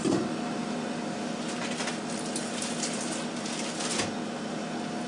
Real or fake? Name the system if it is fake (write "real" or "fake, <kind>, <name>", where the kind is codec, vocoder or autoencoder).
real